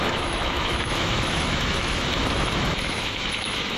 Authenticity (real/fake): fake